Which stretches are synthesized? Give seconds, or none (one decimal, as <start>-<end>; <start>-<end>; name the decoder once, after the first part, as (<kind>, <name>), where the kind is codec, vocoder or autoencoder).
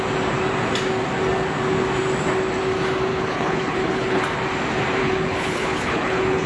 3.1-4.2 (codec, HILCodec); 5.0-6.5